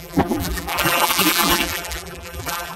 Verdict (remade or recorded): remade